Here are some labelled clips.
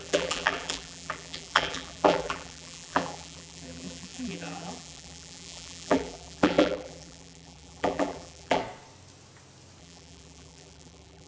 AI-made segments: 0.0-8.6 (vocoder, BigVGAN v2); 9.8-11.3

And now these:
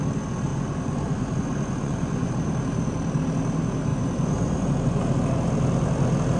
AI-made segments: 0.5-2.3 (vocoder, Vocos); 3.9-5.0

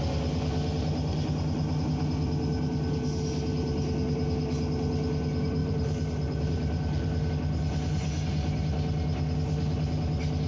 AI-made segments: 5.6-7.3 (vocoder, BigVGAN v2)